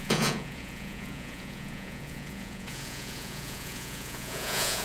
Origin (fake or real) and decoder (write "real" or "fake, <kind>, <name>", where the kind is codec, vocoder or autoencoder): fake, vocoder, Vocos